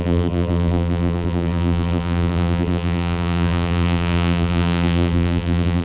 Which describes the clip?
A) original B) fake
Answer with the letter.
B